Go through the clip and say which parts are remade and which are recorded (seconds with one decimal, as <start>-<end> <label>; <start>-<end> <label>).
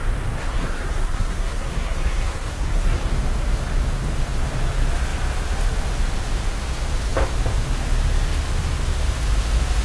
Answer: 0.0-0.4 recorded; 0.4-3.1 remade; 3.1-9.8 recorded